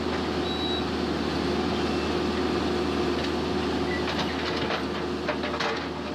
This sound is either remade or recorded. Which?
recorded